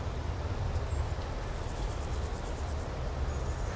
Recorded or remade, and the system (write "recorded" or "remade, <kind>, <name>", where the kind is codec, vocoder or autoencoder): recorded